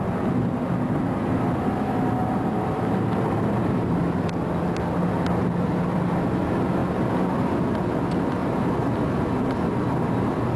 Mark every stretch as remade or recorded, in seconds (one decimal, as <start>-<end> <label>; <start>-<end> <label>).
0.0-2.2 recorded; 2.2-4.0 remade; 4.0-8.4 recorded; 8.4-8.9 remade; 8.9-10.6 recorded